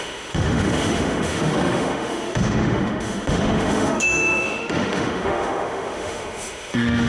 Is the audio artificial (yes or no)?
yes